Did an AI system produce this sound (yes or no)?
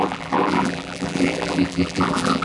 yes